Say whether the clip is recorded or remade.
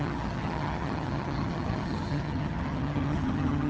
remade